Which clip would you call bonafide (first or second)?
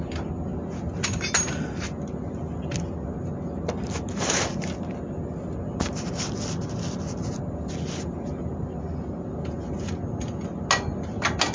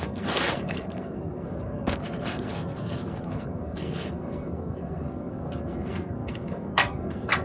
first